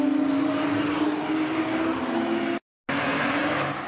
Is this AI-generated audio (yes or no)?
no